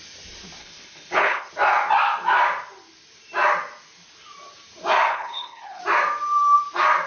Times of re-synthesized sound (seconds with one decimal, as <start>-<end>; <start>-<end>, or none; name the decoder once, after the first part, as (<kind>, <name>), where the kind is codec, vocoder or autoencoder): 0.6-1.5 (codec, HILCodec); 5.1-5.8